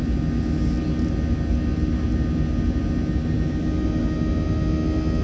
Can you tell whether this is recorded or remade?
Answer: recorded